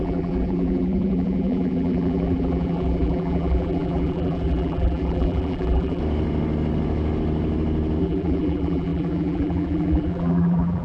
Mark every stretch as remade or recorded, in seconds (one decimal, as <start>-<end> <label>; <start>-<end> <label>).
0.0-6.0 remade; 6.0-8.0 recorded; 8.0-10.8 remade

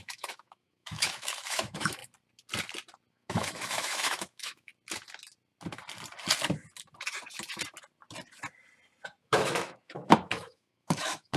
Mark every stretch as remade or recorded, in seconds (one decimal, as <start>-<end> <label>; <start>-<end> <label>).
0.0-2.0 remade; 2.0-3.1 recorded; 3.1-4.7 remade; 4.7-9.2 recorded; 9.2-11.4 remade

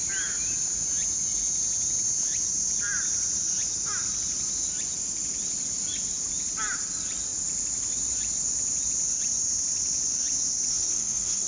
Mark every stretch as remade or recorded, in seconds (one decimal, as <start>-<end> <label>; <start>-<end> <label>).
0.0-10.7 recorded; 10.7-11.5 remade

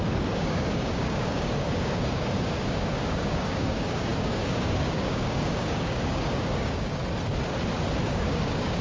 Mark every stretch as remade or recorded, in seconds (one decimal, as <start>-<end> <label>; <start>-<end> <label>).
0.0-7.0 remade; 7.0-8.0 recorded; 8.0-8.8 remade